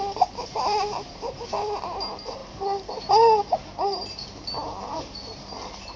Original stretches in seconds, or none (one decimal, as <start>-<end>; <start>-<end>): 0.0-0.4; 1.4-2.4